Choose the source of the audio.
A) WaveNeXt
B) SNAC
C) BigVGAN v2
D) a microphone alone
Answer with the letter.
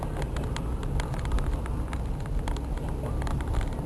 D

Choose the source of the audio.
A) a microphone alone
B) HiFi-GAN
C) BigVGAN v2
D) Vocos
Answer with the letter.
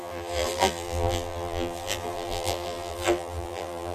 C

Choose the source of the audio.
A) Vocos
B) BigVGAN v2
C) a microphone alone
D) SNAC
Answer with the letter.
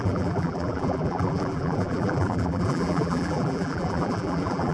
B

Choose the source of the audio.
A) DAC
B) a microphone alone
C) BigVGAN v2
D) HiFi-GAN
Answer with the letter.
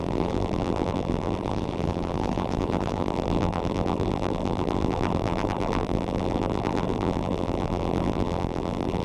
C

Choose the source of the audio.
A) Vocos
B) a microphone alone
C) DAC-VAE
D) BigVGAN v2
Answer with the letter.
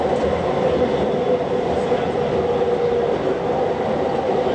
B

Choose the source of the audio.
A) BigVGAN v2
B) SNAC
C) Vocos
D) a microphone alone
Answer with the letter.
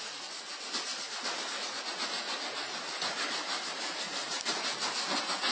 A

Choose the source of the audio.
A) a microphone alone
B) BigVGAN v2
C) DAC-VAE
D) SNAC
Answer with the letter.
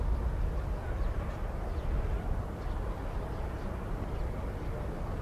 A